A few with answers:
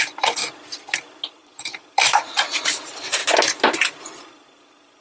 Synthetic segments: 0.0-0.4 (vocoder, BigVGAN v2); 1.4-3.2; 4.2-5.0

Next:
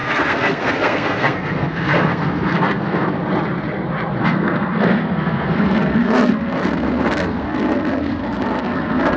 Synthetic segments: 0.0-3.2 (codec, SNAC); 4.2-9.2

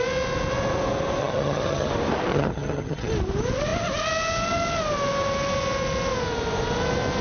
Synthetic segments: 1.2-1.9 (vocoder, HiFi-GAN); 2.3-3.1

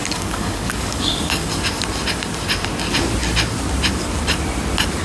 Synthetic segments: 0.0-1.5 (codec, DAC)

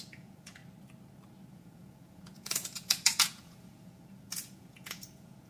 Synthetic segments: 0.0-0.6 (vocoder, Vocos); 1.5-5.5

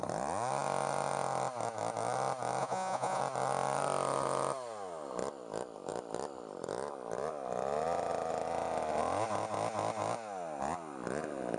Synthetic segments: 2.6-3.2 (vocoder, Vocos)

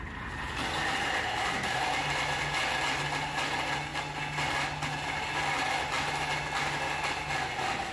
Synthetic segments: none

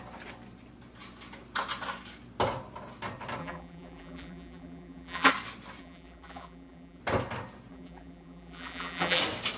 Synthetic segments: 3.4-5.3 (vocoder, BigVGAN v2); 5.8-7.0; 7.7-9.2